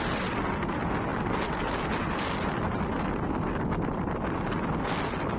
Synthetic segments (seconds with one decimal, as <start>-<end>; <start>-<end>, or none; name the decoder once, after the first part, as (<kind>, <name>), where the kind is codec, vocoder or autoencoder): none